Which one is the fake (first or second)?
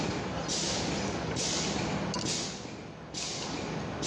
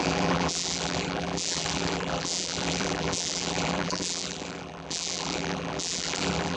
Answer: second